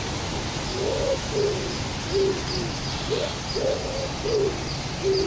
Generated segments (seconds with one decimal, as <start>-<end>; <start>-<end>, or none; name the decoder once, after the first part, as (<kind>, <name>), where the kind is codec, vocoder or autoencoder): 0.7-1.3 (autoencoder, DAC-VAE)